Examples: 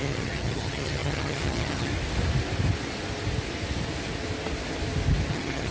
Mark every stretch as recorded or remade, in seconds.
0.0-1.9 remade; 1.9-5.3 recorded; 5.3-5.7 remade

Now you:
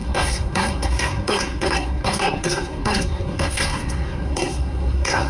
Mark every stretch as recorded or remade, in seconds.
0.0-5.3 remade

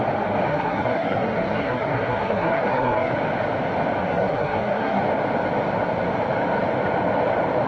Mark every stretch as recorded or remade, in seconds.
0.0-0.5 recorded; 0.5-3.1 remade; 3.1-4.0 recorded; 4.0-5.0 remade; 5.0-7.7 recorded

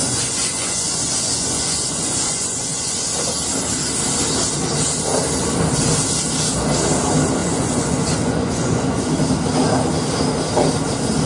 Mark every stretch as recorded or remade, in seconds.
0.0-3.1 remade; 3.1-7.4 recorded; 7.4-9.1 remade; 9.1-11.3 recorded